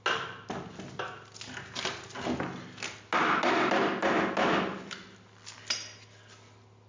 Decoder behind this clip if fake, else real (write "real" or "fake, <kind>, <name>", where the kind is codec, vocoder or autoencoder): real